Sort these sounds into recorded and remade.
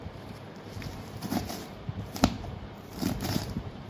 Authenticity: remade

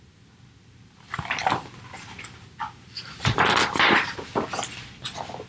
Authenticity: recorded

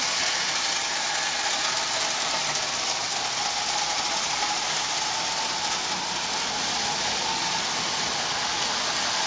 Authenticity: recorded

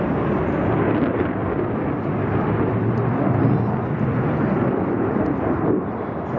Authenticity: recorded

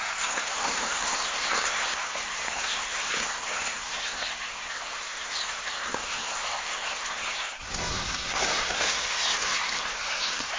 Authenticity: remade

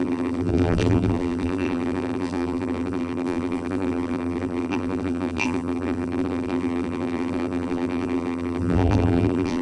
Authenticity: remade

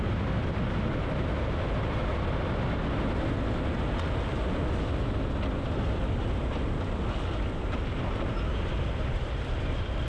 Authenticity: recorded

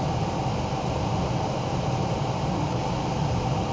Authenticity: recorded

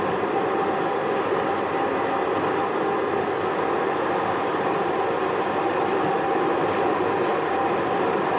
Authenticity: recorded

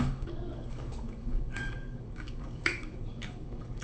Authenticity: remade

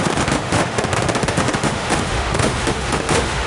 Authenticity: remade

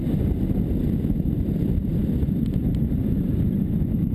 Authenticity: recorded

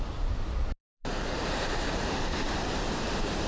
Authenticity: remade